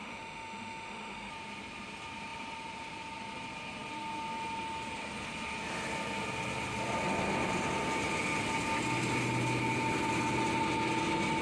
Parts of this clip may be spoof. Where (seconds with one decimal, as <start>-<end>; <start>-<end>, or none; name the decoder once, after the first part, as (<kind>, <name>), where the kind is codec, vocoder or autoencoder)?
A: 0.0-1.3 (autoencoder, DAC-VAE)